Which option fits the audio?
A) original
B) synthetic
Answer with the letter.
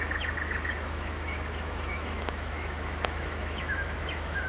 B